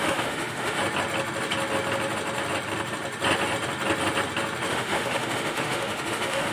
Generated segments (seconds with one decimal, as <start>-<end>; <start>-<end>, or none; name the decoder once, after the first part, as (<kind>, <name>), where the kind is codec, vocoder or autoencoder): 0.0-0.8 (autoencoder, DAC-VAE); 4.7-6.5